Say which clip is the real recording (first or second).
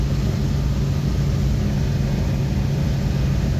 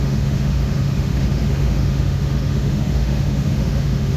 first